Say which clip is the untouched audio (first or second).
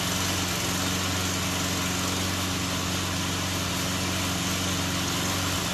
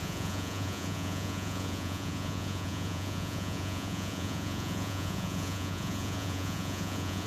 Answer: first